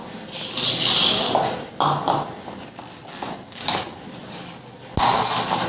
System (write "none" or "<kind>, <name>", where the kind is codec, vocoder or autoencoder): none